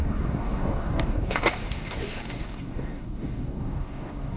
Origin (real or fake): fake